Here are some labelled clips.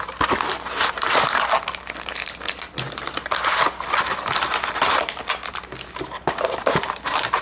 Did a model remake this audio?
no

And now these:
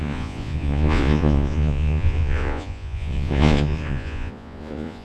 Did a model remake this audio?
yes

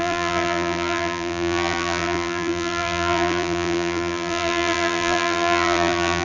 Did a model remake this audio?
yes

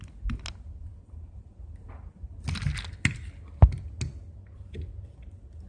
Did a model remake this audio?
no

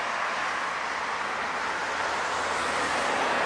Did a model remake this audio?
no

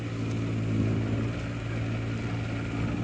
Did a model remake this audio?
no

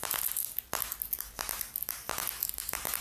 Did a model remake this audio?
no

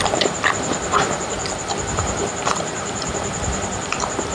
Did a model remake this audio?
yes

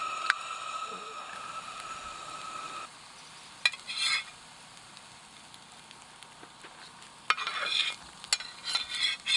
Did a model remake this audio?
no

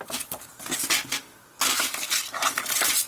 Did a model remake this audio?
no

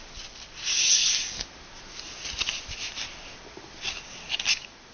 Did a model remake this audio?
no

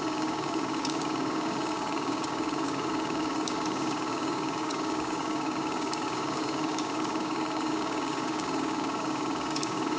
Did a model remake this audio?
yes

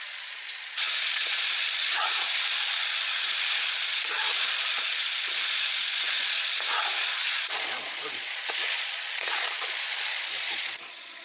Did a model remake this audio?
yes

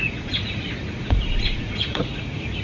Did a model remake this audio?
yes